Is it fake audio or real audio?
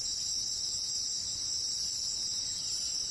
fake